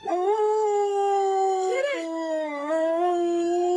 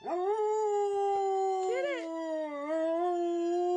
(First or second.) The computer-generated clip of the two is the first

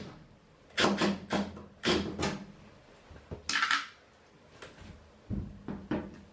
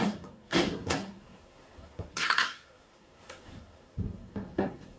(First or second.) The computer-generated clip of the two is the second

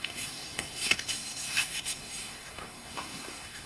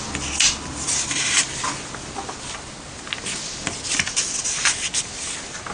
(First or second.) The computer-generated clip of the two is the first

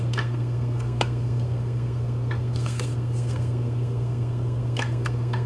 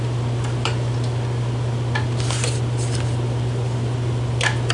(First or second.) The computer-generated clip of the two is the first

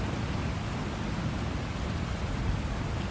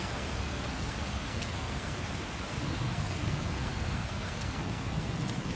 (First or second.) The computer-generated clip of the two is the second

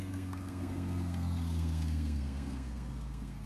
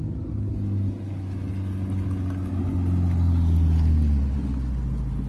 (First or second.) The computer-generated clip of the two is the first